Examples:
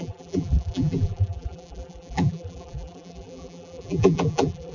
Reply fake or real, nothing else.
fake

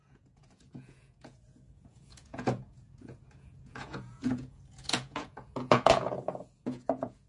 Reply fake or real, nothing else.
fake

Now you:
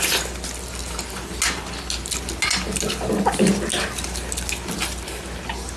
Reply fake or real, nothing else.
real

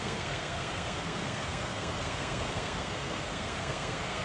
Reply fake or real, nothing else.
fake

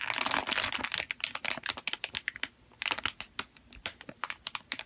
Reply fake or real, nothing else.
real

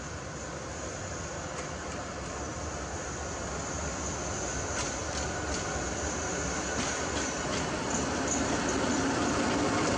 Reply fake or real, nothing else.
real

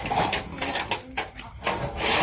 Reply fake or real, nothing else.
real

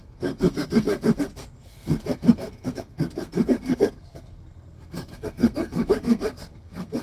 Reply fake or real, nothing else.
fake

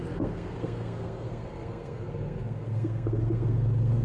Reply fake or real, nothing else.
fake